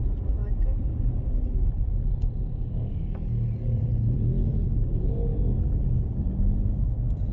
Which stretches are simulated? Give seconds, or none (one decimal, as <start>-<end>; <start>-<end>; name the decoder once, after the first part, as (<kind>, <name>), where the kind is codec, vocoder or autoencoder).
none